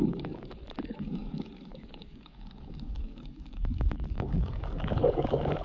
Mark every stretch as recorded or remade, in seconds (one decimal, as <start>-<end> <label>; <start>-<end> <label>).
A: 0.0-5.6 remade